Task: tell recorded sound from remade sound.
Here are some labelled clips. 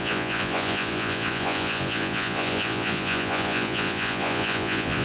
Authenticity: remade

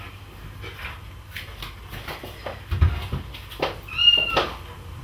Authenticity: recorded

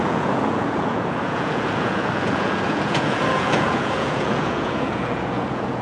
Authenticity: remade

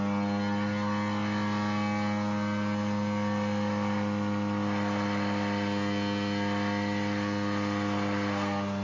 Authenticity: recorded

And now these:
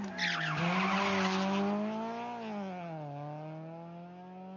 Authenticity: recorded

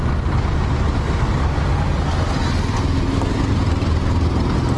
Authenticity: recorded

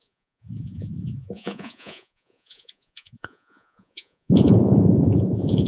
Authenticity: remade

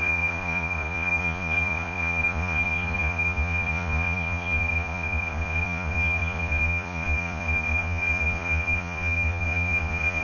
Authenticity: remade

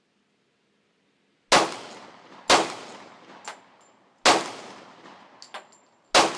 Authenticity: recorded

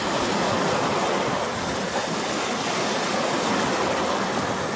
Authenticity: recorded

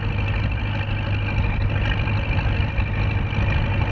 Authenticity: recorded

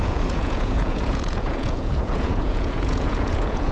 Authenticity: remade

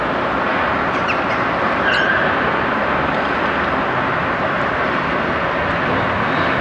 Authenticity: recorded